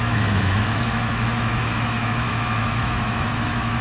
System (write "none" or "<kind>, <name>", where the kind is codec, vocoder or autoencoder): autoencoder, DAC-VAE